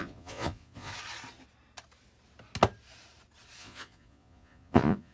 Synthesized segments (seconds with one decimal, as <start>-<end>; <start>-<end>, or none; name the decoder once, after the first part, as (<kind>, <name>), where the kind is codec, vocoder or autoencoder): 0.0-0.9 (vocoder, Vocos); 3.6-5.1